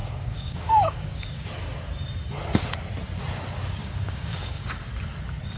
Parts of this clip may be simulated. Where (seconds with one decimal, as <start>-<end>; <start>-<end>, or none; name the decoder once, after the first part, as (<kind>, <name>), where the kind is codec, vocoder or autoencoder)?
0.0-1.5 (codec, DAC); 3.8-4.9